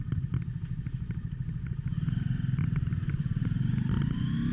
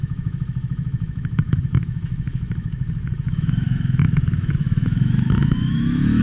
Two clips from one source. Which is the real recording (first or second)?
first